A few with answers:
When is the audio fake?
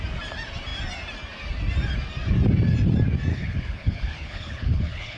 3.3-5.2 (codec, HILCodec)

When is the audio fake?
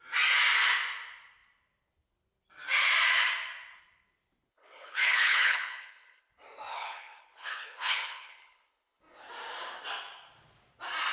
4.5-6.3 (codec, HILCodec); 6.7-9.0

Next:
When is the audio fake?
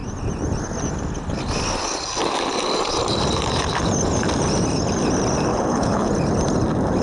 5.5-6.1 (codec, HILCodec)